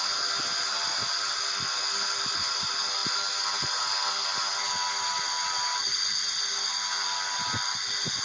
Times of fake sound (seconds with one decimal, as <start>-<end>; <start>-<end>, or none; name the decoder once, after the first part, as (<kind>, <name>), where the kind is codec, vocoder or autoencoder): none